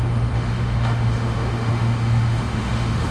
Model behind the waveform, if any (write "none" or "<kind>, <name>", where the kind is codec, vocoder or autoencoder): autoencoder, DAC-VAE